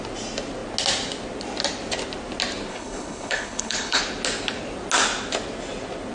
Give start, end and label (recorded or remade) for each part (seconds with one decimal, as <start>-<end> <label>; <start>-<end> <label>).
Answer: 0.0-2.7 recorded; 2.7-4.0 remade; 4.0-6.1 recorded

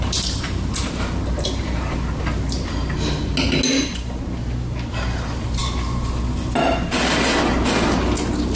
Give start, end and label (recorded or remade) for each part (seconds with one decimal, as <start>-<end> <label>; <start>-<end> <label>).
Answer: 0.0-8.6 recorded

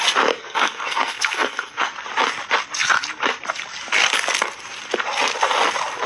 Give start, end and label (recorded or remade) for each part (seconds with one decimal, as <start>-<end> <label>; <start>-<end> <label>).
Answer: 0.0-0.4 recorded; 0.4-1.9 remade; 1.9-6.1 recorded

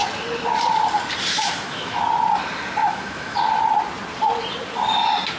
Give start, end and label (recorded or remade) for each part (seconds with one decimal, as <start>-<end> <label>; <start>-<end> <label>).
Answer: 0.0-1.3 recorded; 1.3-2.0 remade; 2.0-2.8 recorded; 2.8-3.4 remade; 3.4-5.4 recorded